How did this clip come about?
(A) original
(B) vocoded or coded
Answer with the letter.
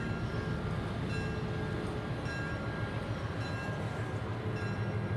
A